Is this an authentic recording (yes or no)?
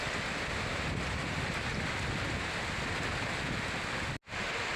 yes